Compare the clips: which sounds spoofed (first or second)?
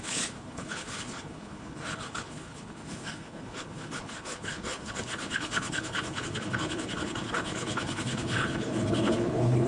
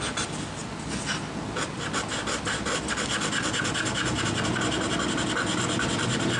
first